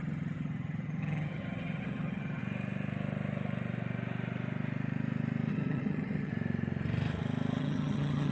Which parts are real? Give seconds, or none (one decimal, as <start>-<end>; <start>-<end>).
2.4-5.5; 6.3-7.6